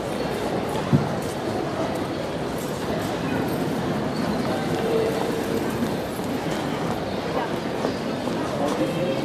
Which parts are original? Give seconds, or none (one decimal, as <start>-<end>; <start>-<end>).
0.0-4.6; 5.2-9.2